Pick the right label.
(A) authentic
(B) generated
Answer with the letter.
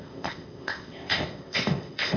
B